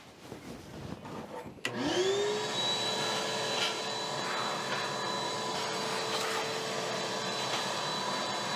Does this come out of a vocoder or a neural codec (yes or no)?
no